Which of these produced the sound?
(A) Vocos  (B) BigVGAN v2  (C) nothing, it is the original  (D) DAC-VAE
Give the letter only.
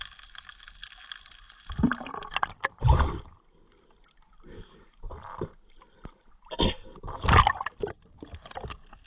C